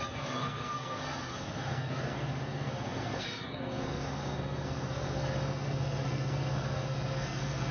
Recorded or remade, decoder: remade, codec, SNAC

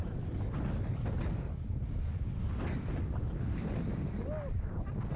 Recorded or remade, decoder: recorded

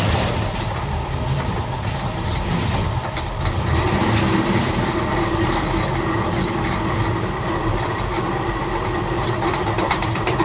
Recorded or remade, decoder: remade, vocoder, BigVGAN v2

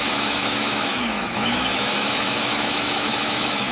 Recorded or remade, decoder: remade, autoencoder, DAC-VAE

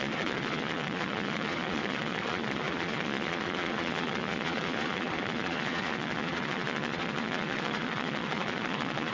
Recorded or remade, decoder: remade, vocoder, Vocos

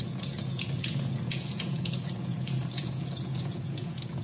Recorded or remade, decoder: remade, vocoder, Vocos